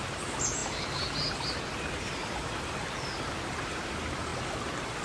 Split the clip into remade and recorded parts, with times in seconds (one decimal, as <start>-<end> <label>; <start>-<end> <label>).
0.0-5.0 recorded